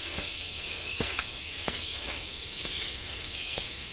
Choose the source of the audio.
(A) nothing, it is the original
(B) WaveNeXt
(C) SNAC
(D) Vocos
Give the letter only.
C